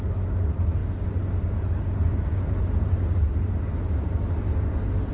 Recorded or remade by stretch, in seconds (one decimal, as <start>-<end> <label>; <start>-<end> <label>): 0.0-5.1 recorded